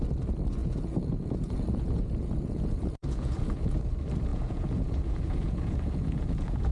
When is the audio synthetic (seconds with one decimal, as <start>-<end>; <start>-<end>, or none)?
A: 0.6-3.8; 4.3-6.7